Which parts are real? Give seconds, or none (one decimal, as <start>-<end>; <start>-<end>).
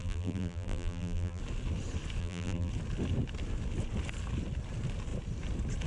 1.4-2.2; 2.7-5.9